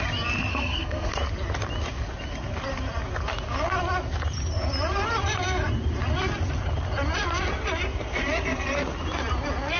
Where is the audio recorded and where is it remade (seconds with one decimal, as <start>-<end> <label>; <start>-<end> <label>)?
0.0-0.5 recorded; 0.5-1.1 remade; 1.1-9.8 recorded